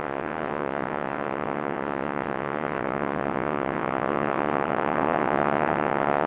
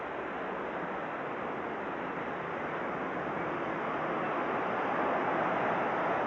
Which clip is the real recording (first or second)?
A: second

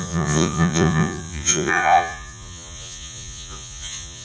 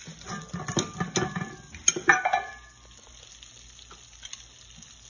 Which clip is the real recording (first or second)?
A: second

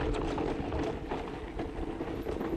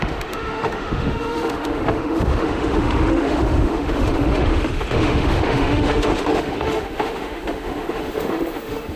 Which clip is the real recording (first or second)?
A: first